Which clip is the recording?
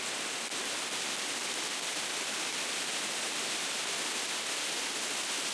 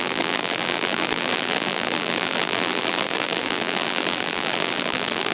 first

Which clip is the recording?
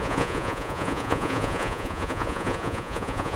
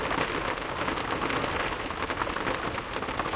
second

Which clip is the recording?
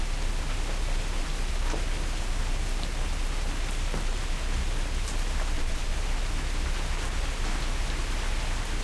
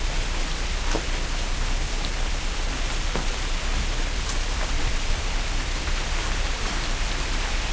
first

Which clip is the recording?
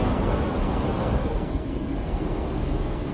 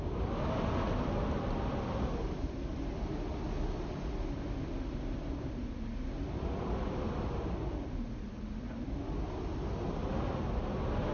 second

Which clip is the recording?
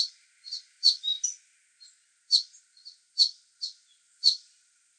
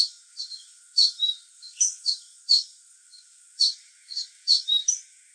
first